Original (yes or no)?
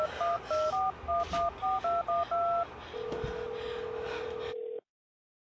yes